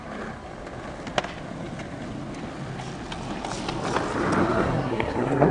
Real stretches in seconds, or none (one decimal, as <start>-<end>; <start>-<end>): 0.0-4.4

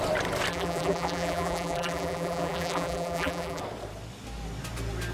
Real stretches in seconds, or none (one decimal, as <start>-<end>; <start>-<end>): 0.0-0.5; 3.6-5.1

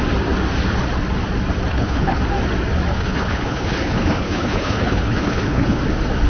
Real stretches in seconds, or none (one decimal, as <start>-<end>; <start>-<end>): 0.0-1.7; 2.2-2.9; 5.8-6.3

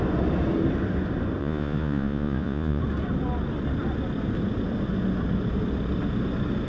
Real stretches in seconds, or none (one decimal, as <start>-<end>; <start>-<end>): 0.0-1.4; 2.8-6.7

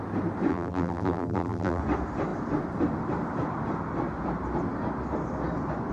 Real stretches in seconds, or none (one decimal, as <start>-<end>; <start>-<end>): 0.0-0.5; 1.8-5.9